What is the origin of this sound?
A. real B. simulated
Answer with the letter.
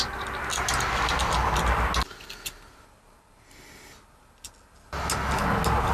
A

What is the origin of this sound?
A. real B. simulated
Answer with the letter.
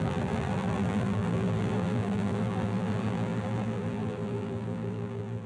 B